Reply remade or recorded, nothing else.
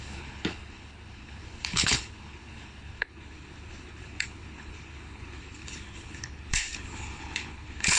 remade